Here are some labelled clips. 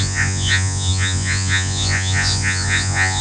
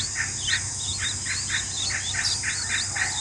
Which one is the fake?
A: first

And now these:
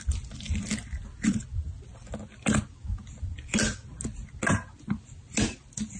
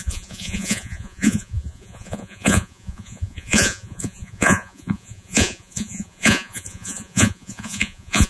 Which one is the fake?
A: second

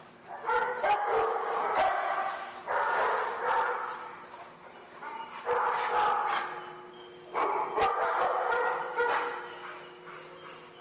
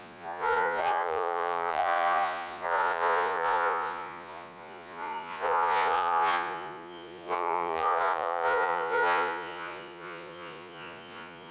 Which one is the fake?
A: second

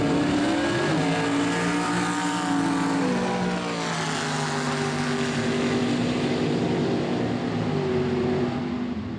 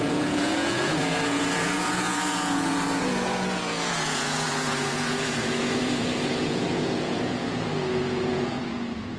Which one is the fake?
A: second